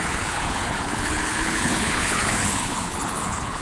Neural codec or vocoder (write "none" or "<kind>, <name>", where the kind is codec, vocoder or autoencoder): codec, HILCodec